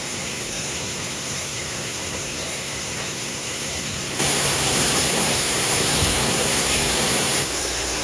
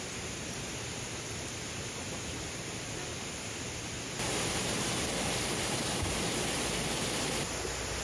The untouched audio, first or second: second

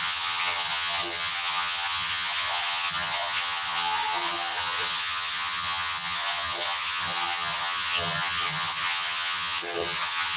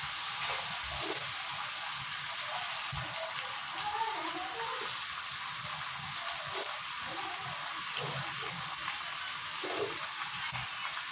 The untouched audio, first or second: second